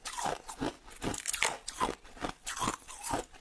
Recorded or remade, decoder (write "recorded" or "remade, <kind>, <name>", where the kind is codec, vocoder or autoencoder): recorded